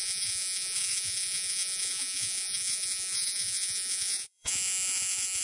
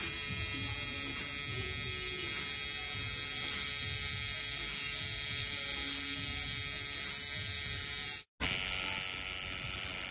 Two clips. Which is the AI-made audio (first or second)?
first